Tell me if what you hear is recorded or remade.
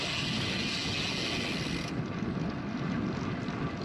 recorded